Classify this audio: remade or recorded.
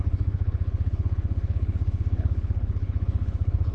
remade